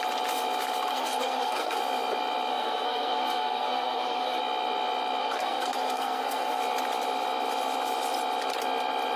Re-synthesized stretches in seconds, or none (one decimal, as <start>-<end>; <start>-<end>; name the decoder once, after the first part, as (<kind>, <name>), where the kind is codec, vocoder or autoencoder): 0.9-1.8 (codec, SNAC); 2.5-4.4; 5.2-6.6